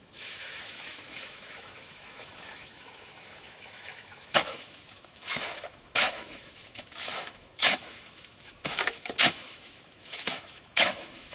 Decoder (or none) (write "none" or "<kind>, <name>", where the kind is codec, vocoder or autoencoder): autoencoder, DAC-VAE